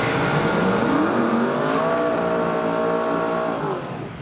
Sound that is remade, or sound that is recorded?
recorded